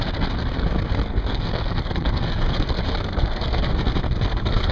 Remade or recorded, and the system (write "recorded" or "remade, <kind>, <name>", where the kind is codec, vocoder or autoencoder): remade, codec, SNAC